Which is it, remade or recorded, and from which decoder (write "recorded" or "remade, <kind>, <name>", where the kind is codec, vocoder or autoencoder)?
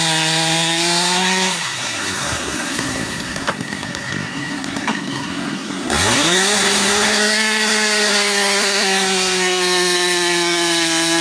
remade, codec, SNAC